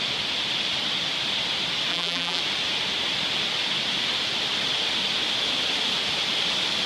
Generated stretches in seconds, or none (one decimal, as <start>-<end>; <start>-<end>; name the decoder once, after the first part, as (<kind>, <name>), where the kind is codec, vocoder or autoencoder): 1.9-2.4 (vocoder, BigVGAN v2)

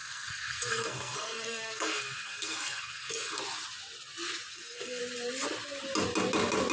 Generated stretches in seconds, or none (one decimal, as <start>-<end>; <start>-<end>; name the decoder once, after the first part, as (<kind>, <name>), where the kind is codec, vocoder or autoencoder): 0.0-3.4 (codec, SNAC); 4.5-5.0

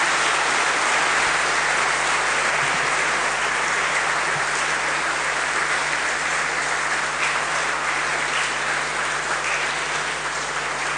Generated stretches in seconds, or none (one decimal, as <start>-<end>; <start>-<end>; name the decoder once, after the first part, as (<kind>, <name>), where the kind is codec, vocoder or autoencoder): none

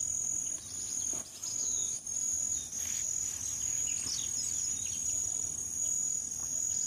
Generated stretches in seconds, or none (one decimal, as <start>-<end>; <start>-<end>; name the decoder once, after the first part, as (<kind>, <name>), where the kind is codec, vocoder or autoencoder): 1.5-2.0 (autoencoder, DAC-VAE)

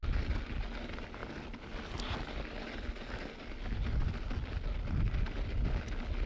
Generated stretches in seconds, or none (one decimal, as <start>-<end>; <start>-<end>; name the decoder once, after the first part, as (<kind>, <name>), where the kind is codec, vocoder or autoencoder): none

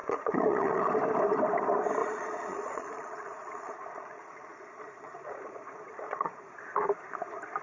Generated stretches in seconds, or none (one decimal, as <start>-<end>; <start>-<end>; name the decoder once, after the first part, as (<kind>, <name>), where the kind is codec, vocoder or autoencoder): 0.0-0.9 (vocoder, Vocos); 2.0-6.6